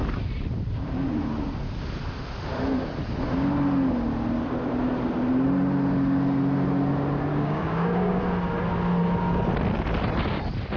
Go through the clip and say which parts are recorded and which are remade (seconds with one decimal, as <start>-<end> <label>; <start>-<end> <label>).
0.0-7.3 recorded; 7.3-8.2 remade; 8.2-10.8 recorded

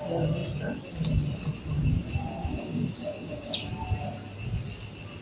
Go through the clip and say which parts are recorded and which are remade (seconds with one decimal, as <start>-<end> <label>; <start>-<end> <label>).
0.0-2.4 recorded; 2.4-3.7 remade; 3.7-5.2 recorded

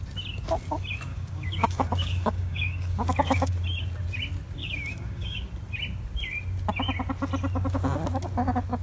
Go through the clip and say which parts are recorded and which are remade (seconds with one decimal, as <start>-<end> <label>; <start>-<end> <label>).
0.0-1.1 recorded; 1.1-3.5 remade; 3.5-4.6 recorded; 4.6-5.5 remade; 5.5-8.8 recorded